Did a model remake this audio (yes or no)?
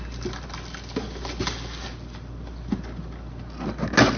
no